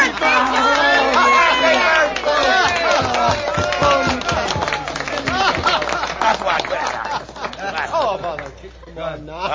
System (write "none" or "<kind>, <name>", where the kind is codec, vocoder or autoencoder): none